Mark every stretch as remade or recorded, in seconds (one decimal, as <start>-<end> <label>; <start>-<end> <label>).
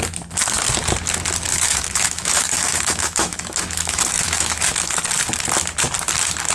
0.0-1.5 recorded; 1.5-5.0 remade; 5.0-6.5 recorded